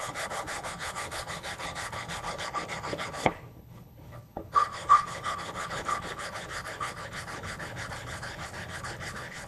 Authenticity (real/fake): fake